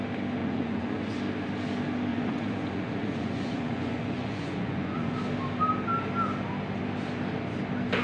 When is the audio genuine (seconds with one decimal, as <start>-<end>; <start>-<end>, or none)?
0.0-0.4; 1.2-2.1; 5.1-8.0